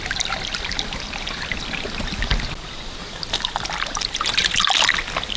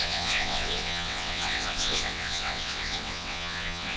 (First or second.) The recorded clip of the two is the first